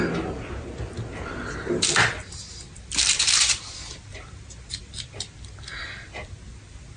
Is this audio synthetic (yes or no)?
no